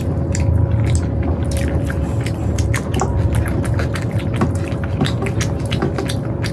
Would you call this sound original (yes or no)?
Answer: yes